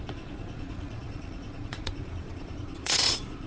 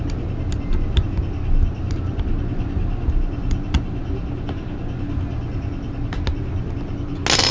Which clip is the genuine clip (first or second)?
second